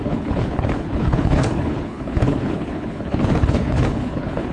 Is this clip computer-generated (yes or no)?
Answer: yes